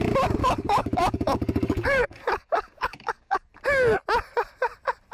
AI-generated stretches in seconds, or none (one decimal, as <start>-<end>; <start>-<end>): 0.4-3.5